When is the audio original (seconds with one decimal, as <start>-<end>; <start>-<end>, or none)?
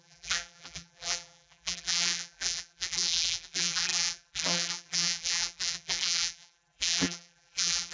none